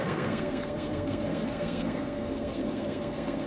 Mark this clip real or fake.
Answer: fake